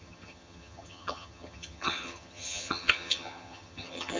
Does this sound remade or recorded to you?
remade